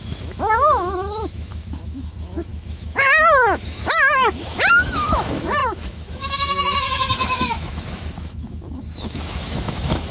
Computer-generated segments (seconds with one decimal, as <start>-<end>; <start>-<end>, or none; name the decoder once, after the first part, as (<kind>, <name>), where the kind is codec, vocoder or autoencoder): 0.0-10.1 (autoencoder, DAC-VAE)